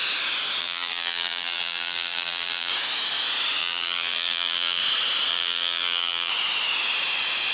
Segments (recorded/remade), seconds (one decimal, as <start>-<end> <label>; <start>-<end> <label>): 0.0-0.6 recorded; 0.6-2.7 remade; 2.7-3.6 recorded; 3.6-4.8 remade; 4.8-5.3 recorded; 5.3-6.3 remade; 6.3-7.5 recorded